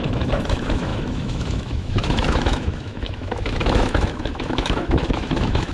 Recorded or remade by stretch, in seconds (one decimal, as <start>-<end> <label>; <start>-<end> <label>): 0.0-5.7 remade